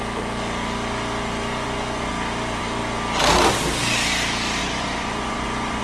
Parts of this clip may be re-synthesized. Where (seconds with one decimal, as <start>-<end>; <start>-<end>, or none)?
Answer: 1.5-2.1; 4.6-5.8